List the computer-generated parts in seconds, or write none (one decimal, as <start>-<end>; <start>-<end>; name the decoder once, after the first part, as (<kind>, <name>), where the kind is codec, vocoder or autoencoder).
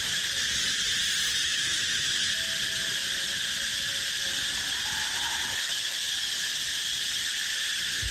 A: 1.4-2.3 (autoencoder, DAC-VAE); 5.5-6.1